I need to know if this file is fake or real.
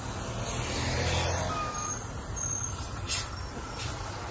real